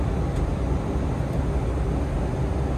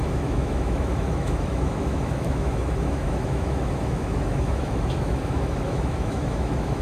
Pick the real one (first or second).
first